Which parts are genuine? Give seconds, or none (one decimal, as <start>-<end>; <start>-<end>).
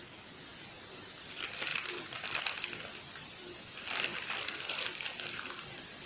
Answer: 0.0-1.7; 2.4-4.1; 4.9-6.1